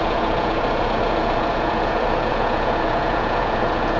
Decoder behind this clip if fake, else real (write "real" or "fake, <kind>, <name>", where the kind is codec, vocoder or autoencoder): fake, vocoder, Vocos